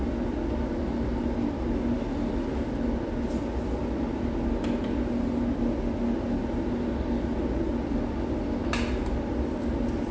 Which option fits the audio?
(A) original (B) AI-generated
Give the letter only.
A